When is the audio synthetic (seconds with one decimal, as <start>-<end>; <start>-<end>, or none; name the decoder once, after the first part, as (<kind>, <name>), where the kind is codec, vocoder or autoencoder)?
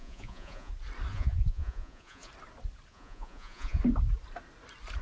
0.0-0.7 (vocoder, Vocos); 1.1-2.3; 2.9-3.8